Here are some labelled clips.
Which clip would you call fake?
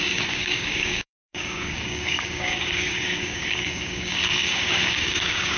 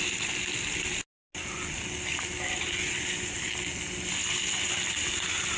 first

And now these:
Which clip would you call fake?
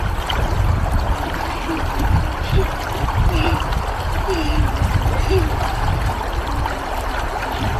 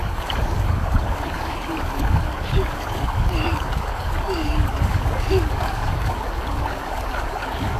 second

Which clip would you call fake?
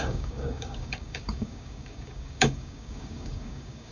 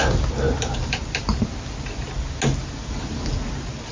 first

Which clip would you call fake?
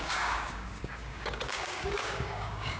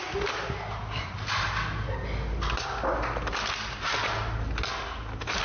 first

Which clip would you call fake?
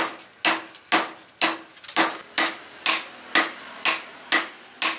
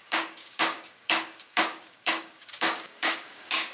second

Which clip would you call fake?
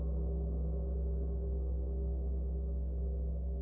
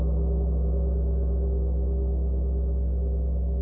first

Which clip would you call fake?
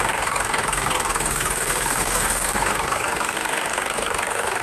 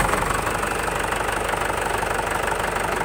first